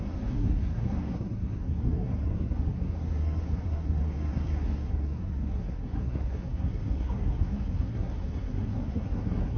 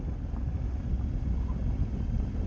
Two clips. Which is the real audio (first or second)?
second